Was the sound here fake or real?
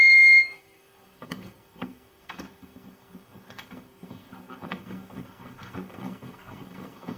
fake